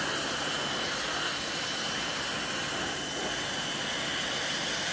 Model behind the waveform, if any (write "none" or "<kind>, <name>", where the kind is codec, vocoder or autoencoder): none